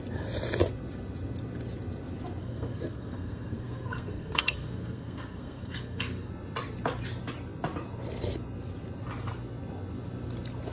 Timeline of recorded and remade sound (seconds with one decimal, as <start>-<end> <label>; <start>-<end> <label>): 0.0-2.4 recorded; 2.4-6.3 remade; 6.3-10.7 recorded